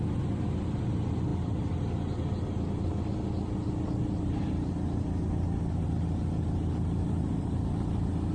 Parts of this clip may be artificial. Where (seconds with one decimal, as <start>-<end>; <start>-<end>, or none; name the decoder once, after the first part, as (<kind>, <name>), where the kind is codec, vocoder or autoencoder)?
none